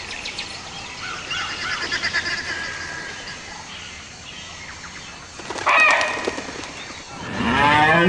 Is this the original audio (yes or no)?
yes